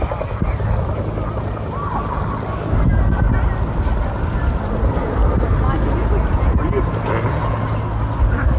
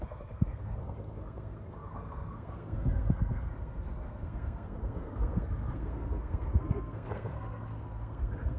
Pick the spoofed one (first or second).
second